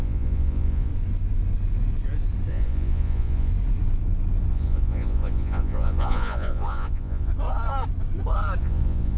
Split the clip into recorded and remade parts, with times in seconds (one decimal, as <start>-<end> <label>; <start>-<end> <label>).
0.0-0.9 remade; 0.9-2.5 recorded; 2.5-3.5 remade; 3.5-4.5 recorded; 4.5-7.3 remade; 7.3-8.6 recorded; 8.6-9.2 remade